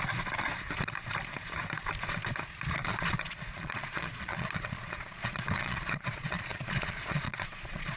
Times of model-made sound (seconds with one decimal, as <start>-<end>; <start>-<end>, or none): 2.9-8.0